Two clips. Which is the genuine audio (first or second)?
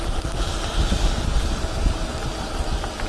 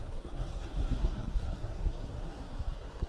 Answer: first